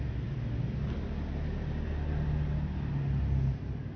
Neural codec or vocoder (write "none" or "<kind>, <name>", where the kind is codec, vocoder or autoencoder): none